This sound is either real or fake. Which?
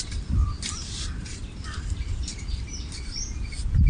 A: fake